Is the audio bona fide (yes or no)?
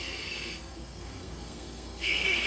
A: no